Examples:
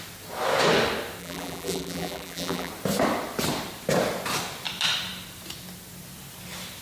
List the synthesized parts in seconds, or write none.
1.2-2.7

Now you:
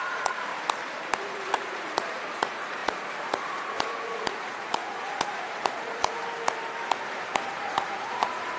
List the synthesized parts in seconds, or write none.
0.0-0.5; 1.2-6.2; 7.5-8.6

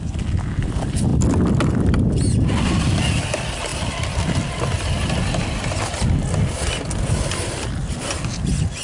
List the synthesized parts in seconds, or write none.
none